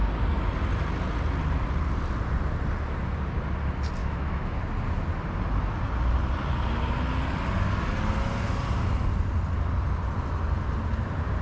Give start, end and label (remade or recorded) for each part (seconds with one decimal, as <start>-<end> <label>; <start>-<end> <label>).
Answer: 0.0-4.0 recorded; 4.0-4.6 remade; 4.6-11.4 recorded

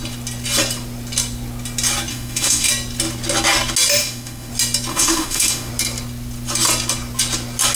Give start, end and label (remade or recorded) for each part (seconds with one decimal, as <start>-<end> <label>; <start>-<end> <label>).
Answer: 0.0-2.1 recorded; 2.1-2.7 remade; 2.7-4.0 recorded; 4.0-4.5 remade; 4.5-4.9 recorded; 4.9-5.7 remade; 5.7-7.8 recorded

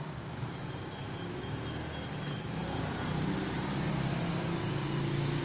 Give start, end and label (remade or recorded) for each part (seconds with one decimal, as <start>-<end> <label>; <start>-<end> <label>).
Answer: 0.0-1.0 recorded; 1.0-1.5 remade; 1.5-5.4 recorded

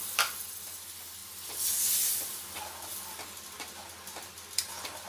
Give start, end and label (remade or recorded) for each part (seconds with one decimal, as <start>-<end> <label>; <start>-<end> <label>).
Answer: 0.0-5.1 recorded

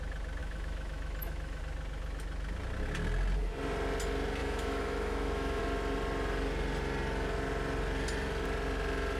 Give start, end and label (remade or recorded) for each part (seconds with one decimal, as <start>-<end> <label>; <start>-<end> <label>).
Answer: 0.0-0.4 recorded; 0.4-1.6 remade; 1.6-4.4 recorded; 4.4-5.6 remade; 5.6-9.2 recorded

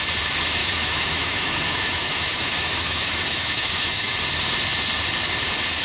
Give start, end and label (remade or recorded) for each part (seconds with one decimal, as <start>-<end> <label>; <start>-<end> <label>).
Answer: 0.0-0.6 recorded; 0.6-4.1 remade; 4.1-5.8 recorded

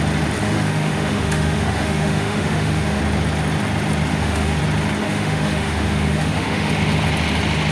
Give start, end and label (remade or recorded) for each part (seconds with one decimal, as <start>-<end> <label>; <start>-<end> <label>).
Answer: 0.0-0.4 recorded; 0.4-3.0 remade; 3.0-4.1 recorded; 4.1-4.6 remade; 4.6-5.0 recorded; 5.0-6.7 remade; 6.7-7.7 recorded

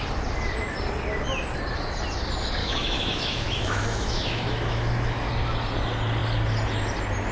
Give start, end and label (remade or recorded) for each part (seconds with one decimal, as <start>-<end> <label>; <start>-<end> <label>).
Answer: 0.0-2.6 recorded; 2.6-5.3 remade; 5.3-7.3 recorded